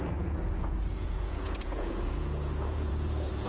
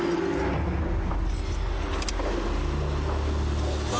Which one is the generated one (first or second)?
first